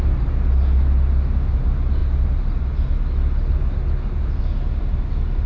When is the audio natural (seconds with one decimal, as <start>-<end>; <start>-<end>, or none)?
0.0-5.5